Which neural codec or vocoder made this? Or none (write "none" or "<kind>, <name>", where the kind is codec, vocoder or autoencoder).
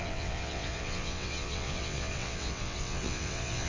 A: vocoder, WaveNeXt